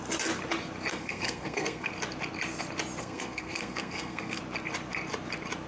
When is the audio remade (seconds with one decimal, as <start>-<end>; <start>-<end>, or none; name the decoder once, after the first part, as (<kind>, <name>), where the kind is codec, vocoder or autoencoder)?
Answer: 0.9-1.9 (codec, SNAC); 3.0-4.4